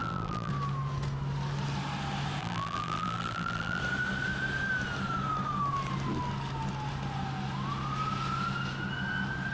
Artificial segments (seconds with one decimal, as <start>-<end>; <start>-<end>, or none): 0.0-0.5; 2.4-3.8